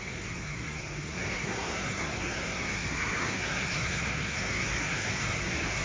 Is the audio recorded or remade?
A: remade